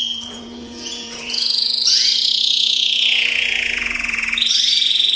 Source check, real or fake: fake